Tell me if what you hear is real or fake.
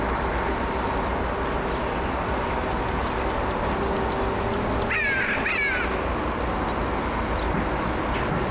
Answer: real